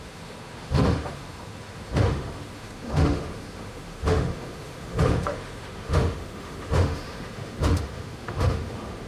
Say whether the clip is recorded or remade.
remade